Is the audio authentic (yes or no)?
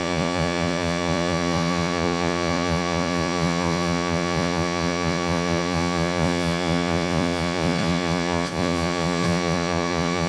no